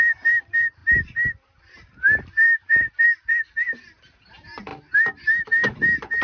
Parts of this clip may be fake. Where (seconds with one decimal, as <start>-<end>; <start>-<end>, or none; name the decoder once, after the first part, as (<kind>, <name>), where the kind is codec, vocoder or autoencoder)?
0.0-4.7 (vocoder, BigVGAN v2); 5.5-6.2